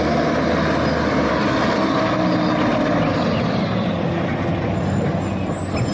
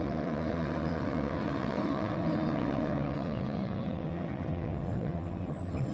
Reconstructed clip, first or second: second